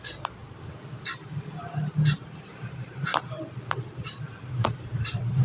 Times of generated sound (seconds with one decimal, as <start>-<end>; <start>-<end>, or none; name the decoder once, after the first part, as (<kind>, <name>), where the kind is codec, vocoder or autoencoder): 0.0-5.4 (vocoder, BigVGAN v2)